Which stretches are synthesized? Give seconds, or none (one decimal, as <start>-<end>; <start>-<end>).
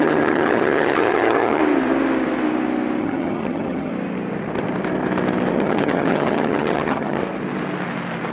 0.0-1.6; 3.0-3.9; 5.5-7.2